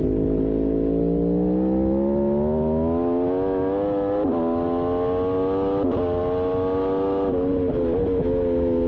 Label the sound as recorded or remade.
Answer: recorded